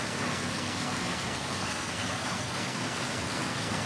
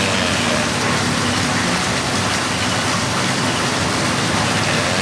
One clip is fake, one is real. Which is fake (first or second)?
first